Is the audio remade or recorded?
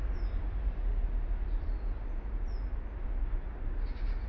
recorded